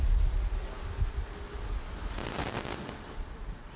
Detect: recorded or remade recorded